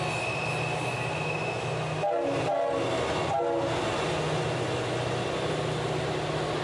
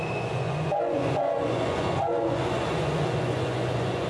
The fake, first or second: second